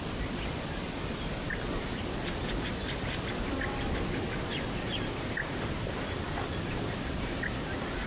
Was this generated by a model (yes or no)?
yes